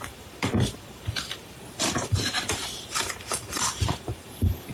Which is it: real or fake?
fake